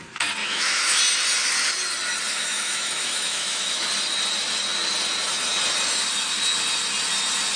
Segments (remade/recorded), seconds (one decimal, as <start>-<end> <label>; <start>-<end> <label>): 0.0-0.4 recorded; 0.4-1.0 remade; 1.0-2.3 recorded; 2.3-3.9 remade; 3.9-7.6 recorded